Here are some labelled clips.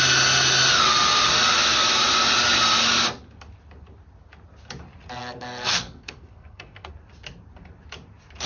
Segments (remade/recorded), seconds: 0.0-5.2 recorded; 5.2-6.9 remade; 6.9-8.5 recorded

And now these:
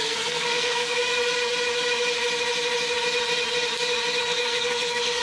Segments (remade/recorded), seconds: 0.0-1.1 remade; 1.1-4.2 recorded; 4.2-5.2 remade

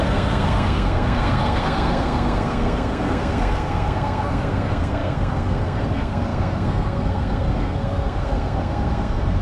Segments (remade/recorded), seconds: 0.0-9.4 remade

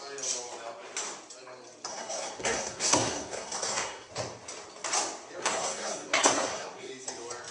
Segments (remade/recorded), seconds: 0.0-1.9 recorded; 1.9-4.1 remade; 4.1-5.4 recorded; 5.4-6.9 remade; 6.9-7.5 recorded

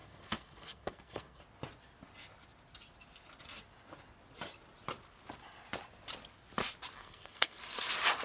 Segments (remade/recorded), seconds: 0.0-1.4 remade; 1.4-7.0 recorded; 7.0-7.6 remade; 7.6-8.2 recorded

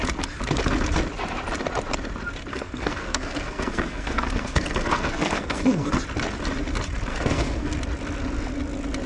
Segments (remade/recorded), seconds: 0.0-2.5 recorded; 2.5-5.9 remade; 5.9-7.1 recorded; 7.1-7.7 remade; 7.7-9.1 recorded

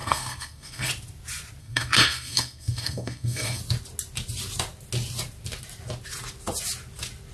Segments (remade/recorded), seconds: 0.0-0.9 remade; 0.9-1.6 recorded; 1.6-3.6 remade; 3.6-7.3 recorded